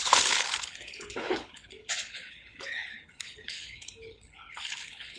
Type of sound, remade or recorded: remade